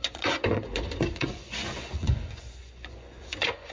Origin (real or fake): fake